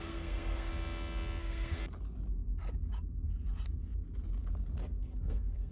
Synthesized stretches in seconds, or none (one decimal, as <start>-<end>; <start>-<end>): 0.0-0.7; 1.4-1.8; 5.0-5.7